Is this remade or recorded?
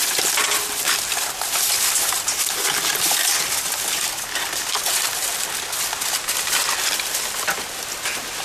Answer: recorded